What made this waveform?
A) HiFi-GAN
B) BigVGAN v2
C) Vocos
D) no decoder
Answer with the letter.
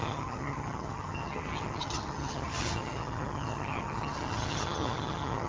A